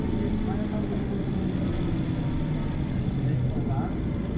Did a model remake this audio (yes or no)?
no